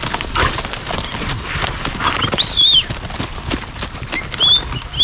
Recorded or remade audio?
recorded